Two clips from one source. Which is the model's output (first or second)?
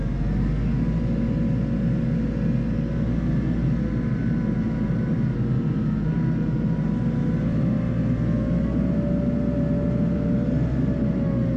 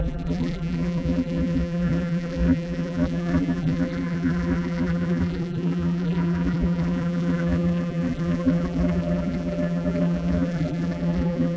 second